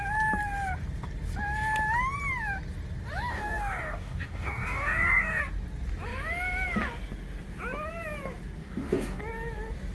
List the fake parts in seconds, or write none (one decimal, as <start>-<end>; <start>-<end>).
3.3-5.4; 8.6-9.2